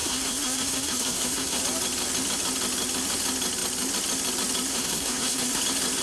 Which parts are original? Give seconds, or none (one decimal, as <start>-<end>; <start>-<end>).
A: 1.6-4.7; 5.6-6.0